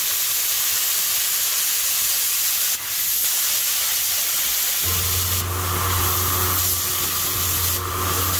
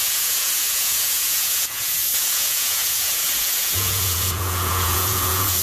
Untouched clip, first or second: first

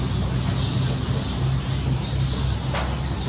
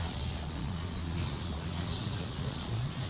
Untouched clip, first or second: first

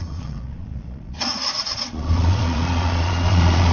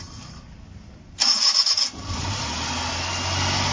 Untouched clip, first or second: second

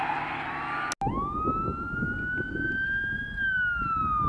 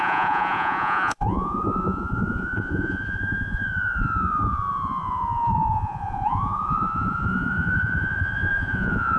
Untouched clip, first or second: first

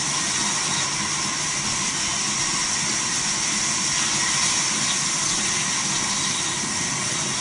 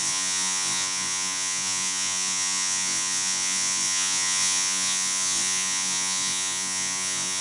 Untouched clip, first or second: first